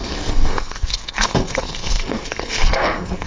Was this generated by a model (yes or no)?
yes